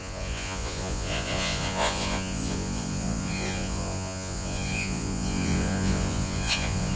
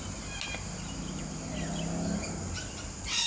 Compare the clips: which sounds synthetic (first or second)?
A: first